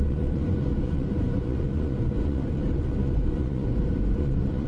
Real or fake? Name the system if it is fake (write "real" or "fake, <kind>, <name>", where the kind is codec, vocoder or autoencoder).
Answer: fake, vocoder, Vocos